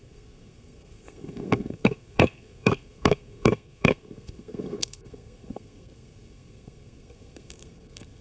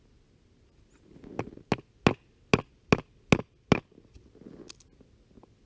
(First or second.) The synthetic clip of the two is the first